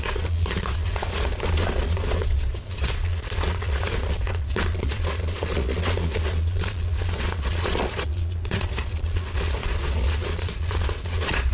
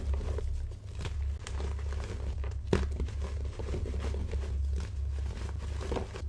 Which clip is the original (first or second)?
second